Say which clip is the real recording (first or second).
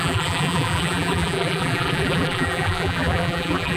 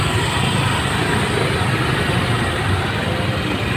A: second